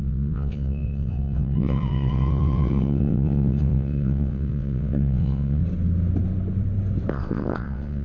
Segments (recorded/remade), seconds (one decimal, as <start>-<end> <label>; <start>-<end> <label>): 0.0-5.6 remade; 5.6-7.1 recorded; 7.1-8.0 remade